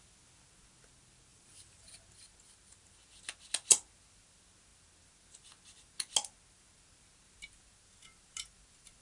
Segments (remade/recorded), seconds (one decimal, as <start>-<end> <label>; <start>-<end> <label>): 0.0-1.3 recorded; 1.3-1.8 remade; 1.8-9.0 recorded